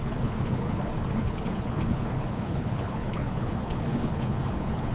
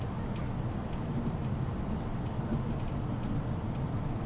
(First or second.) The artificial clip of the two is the first